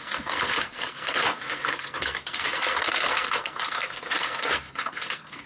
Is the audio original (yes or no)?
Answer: no